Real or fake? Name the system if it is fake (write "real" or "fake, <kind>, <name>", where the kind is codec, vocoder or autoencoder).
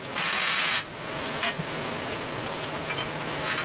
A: real